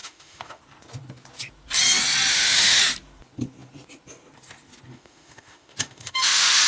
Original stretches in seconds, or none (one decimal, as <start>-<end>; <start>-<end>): 0.6-2.3; 2.8-4.9

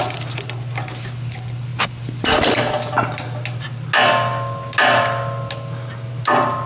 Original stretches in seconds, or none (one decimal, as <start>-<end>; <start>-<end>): 0.0-6.7

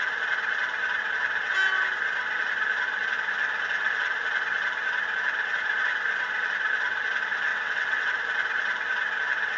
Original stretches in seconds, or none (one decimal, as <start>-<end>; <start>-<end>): 0.0-7.5; 8.1-9.6

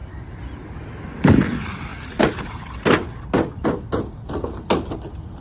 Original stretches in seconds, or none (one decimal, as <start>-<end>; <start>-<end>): 0.0-5.4

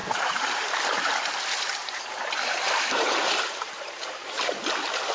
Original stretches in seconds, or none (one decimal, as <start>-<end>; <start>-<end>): 1.1-1.8; 4.0-5.1

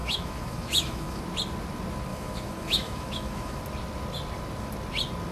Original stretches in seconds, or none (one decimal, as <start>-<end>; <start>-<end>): 1.2-2.1; 3.6-5.3

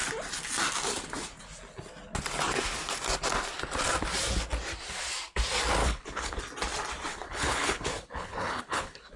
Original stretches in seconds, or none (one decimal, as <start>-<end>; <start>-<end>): 0.0-5.8; 6.4-7.1